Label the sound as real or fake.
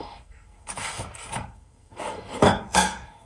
fake